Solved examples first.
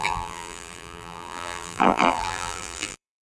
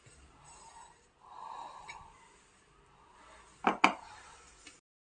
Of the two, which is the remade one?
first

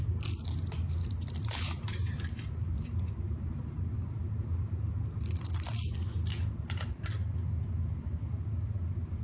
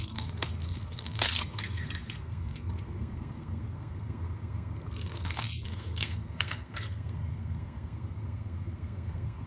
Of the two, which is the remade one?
second